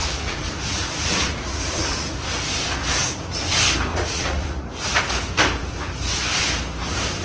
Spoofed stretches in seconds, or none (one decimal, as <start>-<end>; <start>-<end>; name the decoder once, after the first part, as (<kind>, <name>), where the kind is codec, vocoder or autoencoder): 0.0-2.1 (vocoder, Vocos); 3.9-5.0